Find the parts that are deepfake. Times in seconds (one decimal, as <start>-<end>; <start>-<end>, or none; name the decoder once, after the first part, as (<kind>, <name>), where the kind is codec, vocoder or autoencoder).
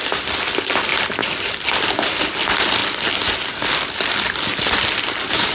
none